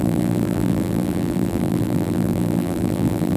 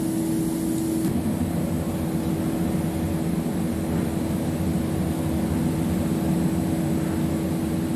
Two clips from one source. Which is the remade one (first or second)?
first